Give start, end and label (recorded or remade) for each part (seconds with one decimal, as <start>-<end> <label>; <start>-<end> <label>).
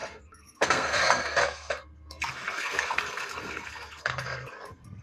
0.0-5.0 remade